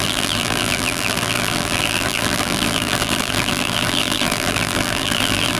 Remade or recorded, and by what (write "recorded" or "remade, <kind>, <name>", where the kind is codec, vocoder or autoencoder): remade, vocoder, BigVGAN v2